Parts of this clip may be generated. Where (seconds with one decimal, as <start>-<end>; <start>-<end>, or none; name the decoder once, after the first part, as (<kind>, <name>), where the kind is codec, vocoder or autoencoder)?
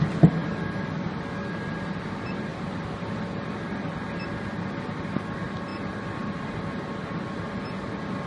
2.5-3.5 (vocoder, BigVGAN v2); 5.7-6.6